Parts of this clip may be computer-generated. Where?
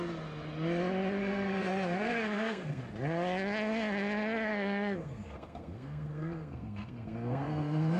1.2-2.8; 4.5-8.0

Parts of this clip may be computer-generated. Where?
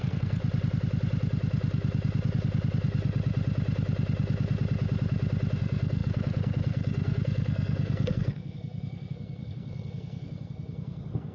0.0-0.4; 5.6-11.3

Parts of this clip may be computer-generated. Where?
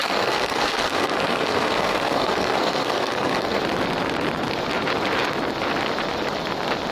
0.0-3.6